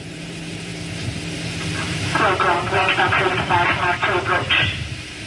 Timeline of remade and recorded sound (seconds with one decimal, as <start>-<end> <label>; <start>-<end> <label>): 0.0-0.7 remade; 0.7-1.8 recorded; 1.8-5.3 remade